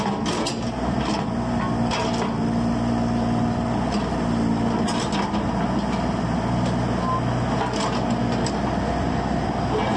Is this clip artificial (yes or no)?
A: no